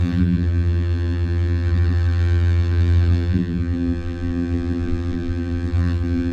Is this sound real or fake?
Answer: fake